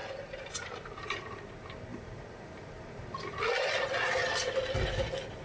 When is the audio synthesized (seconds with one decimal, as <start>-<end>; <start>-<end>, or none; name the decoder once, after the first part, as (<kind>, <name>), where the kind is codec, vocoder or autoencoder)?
0.0-1.5 (vocoder, BigVGAN v2); 1.9-3.4